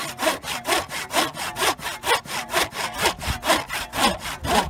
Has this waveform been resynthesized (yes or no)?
no